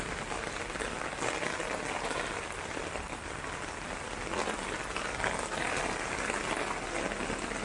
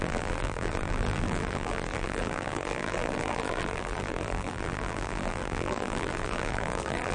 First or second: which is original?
first